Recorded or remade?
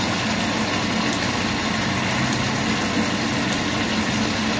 recorded